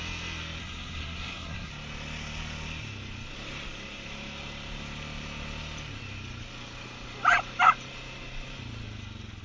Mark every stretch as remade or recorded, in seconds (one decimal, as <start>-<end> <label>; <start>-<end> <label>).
0.0-0.6 recorded; 0.6-1.7 remade; 1.7-9.4 recorded